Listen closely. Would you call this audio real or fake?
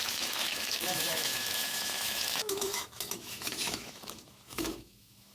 fake